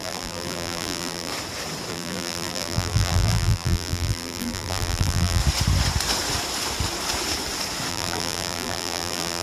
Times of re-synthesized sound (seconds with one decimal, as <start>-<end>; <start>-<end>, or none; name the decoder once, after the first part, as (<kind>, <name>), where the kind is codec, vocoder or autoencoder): 0.0-1.3 (vocoder, BigVGAN v2); 1.9-5.4; 7.9-9.4